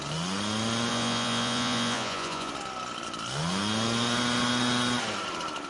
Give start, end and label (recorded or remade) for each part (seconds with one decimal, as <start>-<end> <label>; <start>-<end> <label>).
0.0-0.9 recorded; 0.9-2.5 remade; 2.5-5.7 recorded